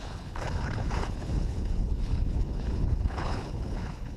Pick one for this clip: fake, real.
fake